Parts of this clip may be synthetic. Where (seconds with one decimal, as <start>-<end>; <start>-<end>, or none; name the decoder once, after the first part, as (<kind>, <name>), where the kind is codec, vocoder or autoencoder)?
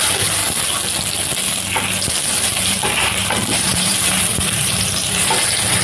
0.0-0.4 (vocoder, BigVGAN v2); 2.2-5.8